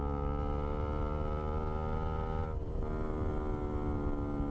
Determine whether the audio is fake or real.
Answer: real